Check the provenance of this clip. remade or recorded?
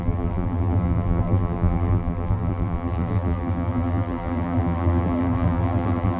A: remade